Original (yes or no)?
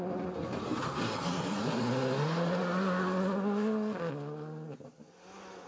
yes